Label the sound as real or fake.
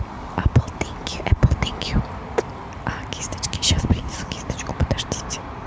real